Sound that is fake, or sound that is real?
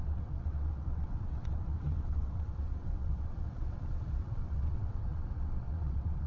fake